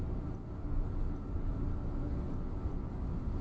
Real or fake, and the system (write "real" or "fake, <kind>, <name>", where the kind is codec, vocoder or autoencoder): real